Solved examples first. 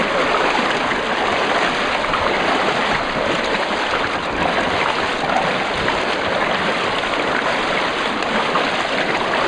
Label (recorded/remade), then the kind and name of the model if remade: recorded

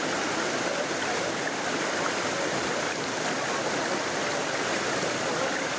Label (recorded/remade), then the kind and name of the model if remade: recorded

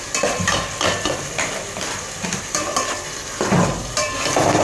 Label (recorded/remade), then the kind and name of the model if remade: remade, vocoder, BigVGAN v2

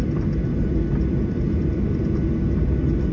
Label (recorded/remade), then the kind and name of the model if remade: recorded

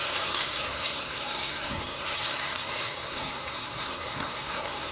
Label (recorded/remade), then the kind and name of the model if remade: remade, codec, SNAC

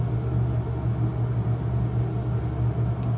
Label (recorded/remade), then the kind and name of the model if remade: recorded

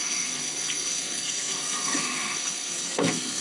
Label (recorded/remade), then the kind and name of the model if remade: remade, codec, SNAC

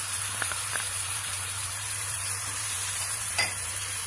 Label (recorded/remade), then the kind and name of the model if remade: remade, vocoder, BigVGAN v2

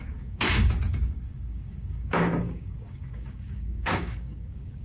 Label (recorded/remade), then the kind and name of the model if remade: remade, codec, DAC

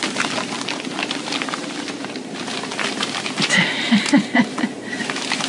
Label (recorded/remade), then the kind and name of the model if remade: recorded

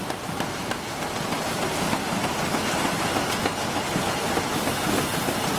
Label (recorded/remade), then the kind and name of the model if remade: recorded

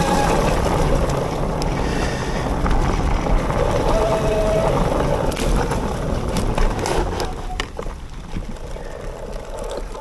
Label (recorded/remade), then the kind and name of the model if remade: recorded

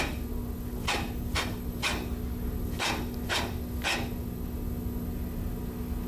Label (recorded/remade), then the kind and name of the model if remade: recorded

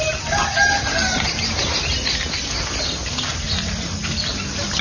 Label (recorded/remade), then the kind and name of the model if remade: recorded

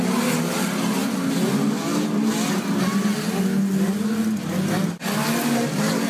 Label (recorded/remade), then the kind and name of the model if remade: recorded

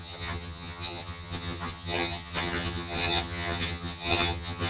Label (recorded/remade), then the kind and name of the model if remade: remade, vocoder, HiFi-GAN